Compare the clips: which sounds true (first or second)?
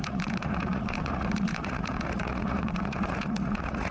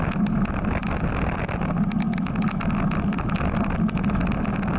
second